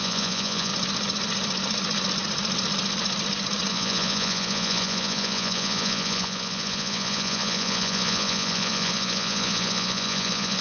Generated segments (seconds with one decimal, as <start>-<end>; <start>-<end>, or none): 0.0-0.7; 3.7-10.6